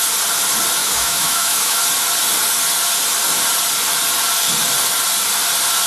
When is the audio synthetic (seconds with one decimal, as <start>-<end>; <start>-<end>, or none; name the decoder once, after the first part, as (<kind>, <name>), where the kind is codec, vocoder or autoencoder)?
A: 0.8-1.8 (autoencoder, DAC-VAE)